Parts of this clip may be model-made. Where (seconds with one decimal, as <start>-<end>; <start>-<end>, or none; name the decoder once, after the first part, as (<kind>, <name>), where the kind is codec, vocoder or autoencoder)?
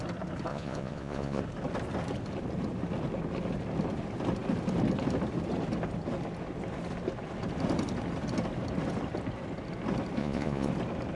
0.5-1.4 (vocoder, Vocos); 10.2-10.7